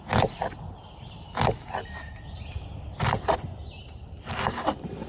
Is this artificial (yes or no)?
no